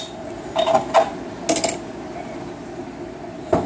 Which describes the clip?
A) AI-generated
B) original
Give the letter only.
B